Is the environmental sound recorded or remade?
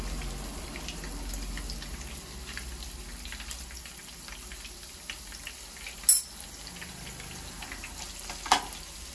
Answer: recorded